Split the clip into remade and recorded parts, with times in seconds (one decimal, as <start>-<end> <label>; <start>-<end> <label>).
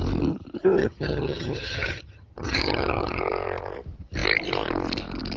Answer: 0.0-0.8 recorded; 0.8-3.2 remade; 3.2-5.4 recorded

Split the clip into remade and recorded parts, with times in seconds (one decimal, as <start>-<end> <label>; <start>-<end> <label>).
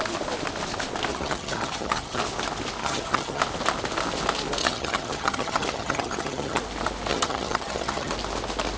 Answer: 0.0-1.1 recorded; 1.1-2.2 remade; 2.2-2.8 recorded; 2.8-3.4 remade; 3.4-4.6 recorded; 4.6-6.6 remade; 6.6-7.1 recorded; 7.1-8.1 remade; 8.1-8.8 recorded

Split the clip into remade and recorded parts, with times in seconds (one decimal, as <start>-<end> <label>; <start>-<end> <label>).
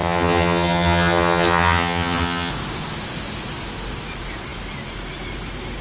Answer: 0.0-2.5 remade; 2.5-5.8 recorded